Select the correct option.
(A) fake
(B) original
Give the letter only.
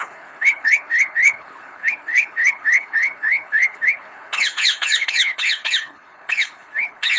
A